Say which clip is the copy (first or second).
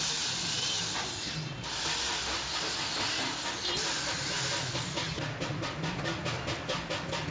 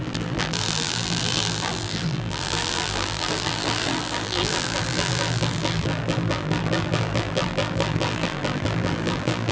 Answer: second